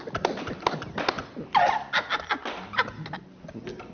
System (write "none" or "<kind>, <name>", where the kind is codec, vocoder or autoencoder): none